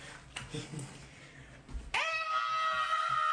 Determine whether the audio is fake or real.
real